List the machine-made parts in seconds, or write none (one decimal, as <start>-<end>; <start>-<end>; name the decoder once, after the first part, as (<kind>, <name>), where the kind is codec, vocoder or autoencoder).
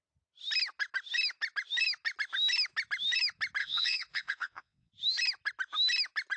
3.6-4.9 (vocoder, WaveNeXt)